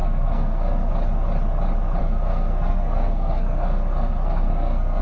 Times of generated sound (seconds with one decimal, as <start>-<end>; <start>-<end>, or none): 0.0-0.9; 2.0-5.0